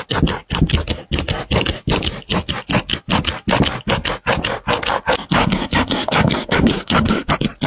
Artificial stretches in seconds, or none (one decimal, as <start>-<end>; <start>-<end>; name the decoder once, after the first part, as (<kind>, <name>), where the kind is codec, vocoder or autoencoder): 5.4-7.3 (codec, SNAC)